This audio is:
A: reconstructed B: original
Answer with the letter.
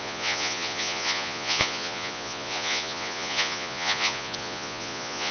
A